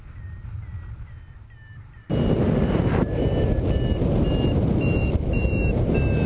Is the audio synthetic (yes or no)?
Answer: no